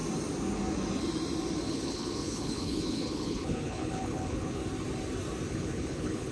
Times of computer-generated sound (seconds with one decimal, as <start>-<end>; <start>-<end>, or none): 1.7-4.6; 5.5-6.3